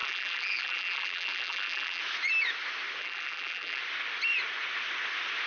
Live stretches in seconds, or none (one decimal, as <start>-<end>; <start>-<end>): 2.0-3.0; 3.8-5.5